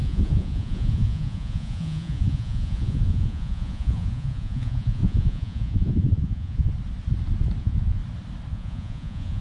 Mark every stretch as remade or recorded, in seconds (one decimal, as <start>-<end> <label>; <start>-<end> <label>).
0.0-6.7 remade; 6.7-7.6 recorded; 7.6-8.0 remade; 8.0-8.5 recorded; 8.5-9.4 remade